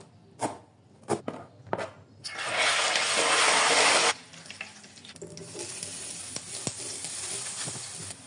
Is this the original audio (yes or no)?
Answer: yes